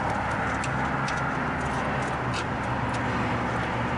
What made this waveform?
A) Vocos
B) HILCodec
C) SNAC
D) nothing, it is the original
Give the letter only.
D